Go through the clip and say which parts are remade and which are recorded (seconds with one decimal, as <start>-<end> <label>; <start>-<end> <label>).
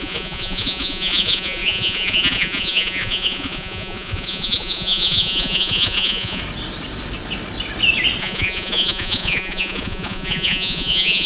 0.0-6.4 remade; 6.4-8.2 recorded; 8.2-11.3 remade